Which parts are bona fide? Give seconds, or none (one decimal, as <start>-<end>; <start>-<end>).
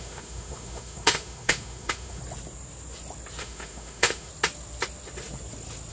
2.2-3.4; 4.3-5.9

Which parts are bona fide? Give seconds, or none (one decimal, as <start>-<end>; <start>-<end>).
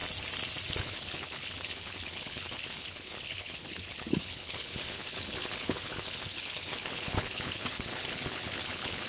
0.0-0.8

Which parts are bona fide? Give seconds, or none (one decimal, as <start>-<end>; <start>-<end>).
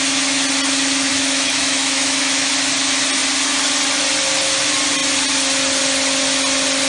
0.0-1.1; 2.5-6.9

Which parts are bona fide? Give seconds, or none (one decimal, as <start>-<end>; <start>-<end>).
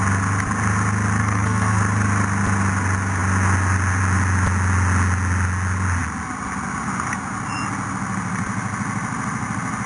0.0-1.2; 1.8-9.9